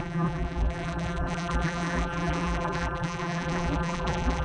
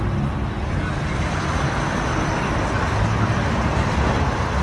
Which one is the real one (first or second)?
second